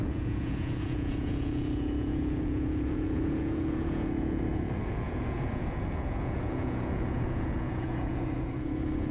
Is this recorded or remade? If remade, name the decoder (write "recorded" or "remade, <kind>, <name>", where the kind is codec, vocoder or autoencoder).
remade, vocoder, Vocos